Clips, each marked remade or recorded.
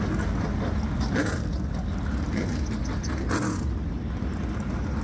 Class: recorded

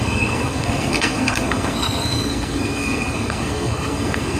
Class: remade